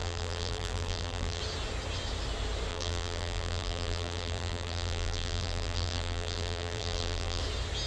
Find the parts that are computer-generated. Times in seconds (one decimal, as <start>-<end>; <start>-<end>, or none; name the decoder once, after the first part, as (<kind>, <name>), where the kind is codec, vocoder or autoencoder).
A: 0.0-1.4 (vocoder, BigVGAN v2); 2.7-7.4